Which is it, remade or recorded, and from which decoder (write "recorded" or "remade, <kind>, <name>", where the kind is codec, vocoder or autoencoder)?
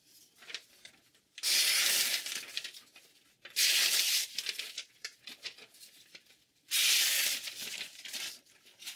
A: remade, vocoder, BigVGAN v2